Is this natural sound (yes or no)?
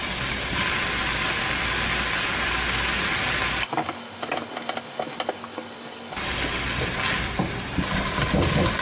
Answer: yes